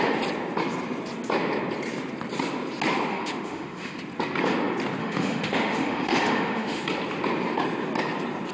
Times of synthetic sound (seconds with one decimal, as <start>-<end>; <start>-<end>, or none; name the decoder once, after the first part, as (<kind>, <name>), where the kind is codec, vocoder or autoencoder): 3.1-4.0 (autoencoder, DAC-VAE); 5.0-6.8